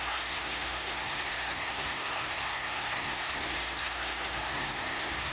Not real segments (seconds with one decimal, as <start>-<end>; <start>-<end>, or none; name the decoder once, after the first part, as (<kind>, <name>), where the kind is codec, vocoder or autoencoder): 0.0-5.3 (codec, SNAC)